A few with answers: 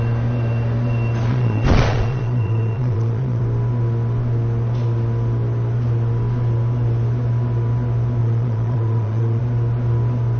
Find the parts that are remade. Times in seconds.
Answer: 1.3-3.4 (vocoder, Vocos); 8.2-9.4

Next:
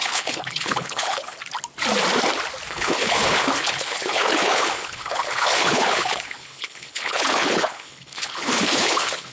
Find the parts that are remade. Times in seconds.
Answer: 0.0-1.4 (codec, HILCodec); 2.7-9.3